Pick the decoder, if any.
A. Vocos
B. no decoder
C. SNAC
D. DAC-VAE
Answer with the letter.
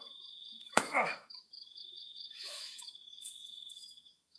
D